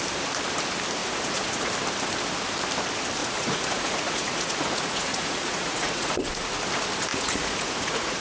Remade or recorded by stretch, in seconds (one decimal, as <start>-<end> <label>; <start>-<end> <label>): 0.0-1.0 recorded; 1.0-1.7 remade; 1.7-3.2 recorded; 3.2-6.5 remade; 6.5-7.1 recorded; 7.1-8.2 remade